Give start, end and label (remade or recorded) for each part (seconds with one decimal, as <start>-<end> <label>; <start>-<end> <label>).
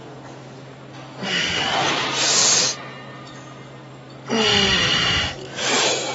0.0-6.1 recorded